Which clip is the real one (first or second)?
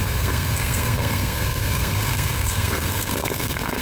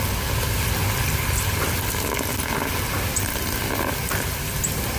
second